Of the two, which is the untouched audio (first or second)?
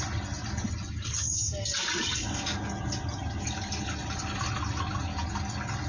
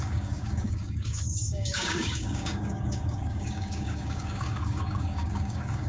first